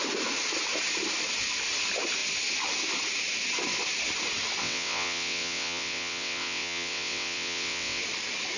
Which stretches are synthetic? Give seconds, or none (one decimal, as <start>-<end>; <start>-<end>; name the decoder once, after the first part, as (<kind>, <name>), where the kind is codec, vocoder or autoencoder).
4.6-8.0 (vocoder, WaveNeXt)

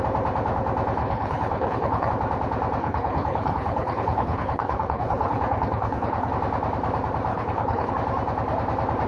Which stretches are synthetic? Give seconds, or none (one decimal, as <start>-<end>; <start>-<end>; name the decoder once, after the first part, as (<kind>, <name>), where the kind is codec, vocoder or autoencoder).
1.0-2.1 (codec, HILCodec); 2.8-6.3; 7.3-7.9